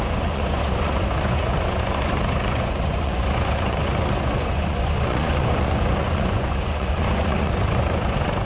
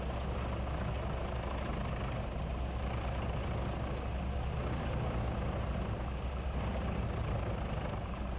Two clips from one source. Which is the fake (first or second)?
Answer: first